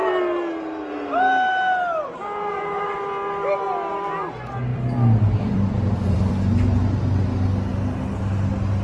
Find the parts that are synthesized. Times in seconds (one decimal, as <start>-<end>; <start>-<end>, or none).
4.7-6.3